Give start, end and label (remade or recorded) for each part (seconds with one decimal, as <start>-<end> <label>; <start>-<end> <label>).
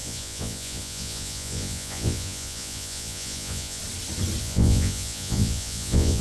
0.0-3.8 remade; 3.8-4.4 recorded; 4.4-6.2 remade